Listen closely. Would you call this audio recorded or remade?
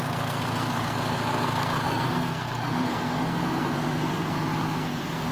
remade